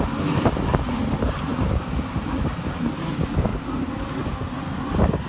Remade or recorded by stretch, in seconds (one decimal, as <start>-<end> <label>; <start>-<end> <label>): 0.0-1.5 recorded; 1.5-2.6 remade; 2.6-3.5 recorded; 3.5-4.8 remade; 4.8-5.3 recorded